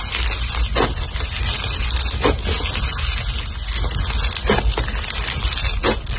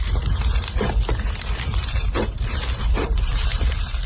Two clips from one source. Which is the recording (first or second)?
first